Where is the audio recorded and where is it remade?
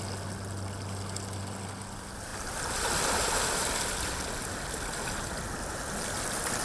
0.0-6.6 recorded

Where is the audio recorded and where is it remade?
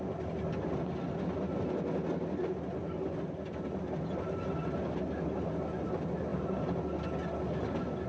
0.0-6.3 recorded; 6.3-6.8 remade; 6.8-8.1 recorded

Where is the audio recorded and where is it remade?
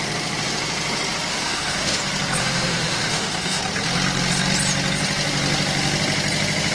0.0-1.3 recorded; 1.3-2.0 remade; 2.0-2.4 recorded; 2.4-3.6 remade; 3.6-6.7 recorded